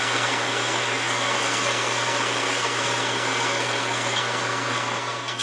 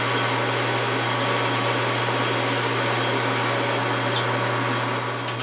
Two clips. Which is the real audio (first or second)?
second